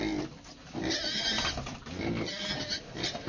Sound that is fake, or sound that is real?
real